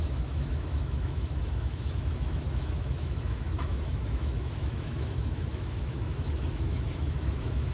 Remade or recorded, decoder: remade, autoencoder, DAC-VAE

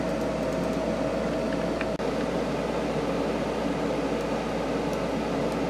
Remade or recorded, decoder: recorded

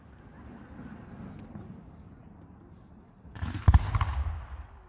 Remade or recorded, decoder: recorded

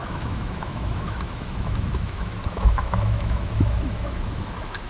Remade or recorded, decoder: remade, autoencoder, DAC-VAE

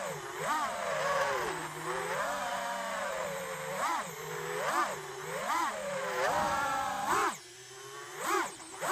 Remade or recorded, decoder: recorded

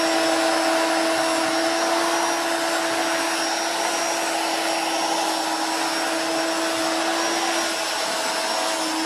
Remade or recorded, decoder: recorded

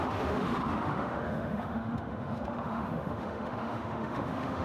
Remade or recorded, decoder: remade, autoencoder, DAC-VAE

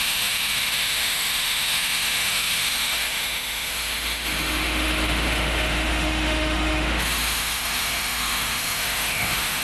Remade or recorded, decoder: remade, autoencoder, DAC-VAE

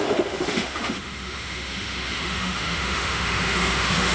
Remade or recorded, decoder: remade, autoencoder, DAC-VAE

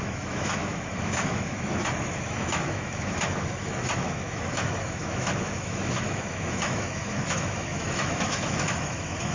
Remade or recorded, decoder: remade, autoencoder, DAC-VAE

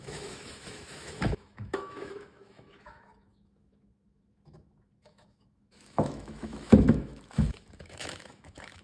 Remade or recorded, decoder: remade, autoencoder, DAC-VAE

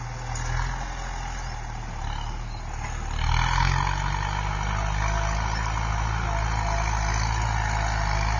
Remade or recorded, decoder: recorded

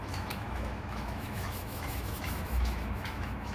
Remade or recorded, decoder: remade, autoencoder, DAC-VAE